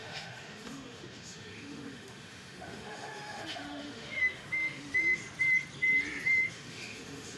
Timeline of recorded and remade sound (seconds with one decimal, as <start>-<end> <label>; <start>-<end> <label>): 0.0-5.2 remade; 5.2-6.5 recorded; 6.5-7.4 remade